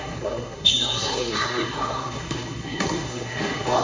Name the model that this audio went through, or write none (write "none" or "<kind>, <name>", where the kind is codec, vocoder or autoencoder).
codec, SNAC